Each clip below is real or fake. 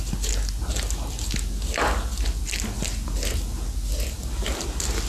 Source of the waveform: real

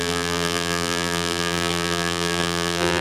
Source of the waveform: fake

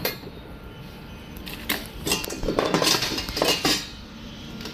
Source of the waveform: fake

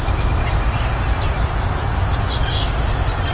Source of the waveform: real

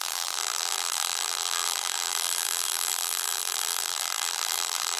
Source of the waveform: fake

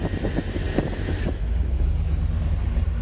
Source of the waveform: real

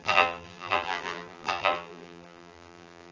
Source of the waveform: fake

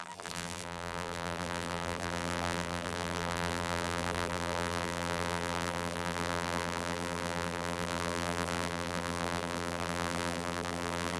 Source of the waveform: fake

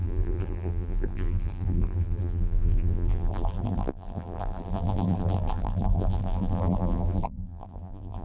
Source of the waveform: fake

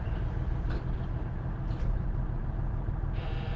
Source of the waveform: fake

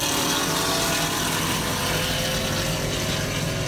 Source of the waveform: real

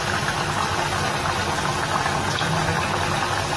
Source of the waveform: real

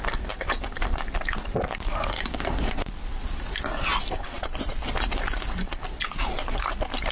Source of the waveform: real